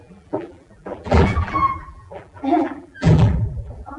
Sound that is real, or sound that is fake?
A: fake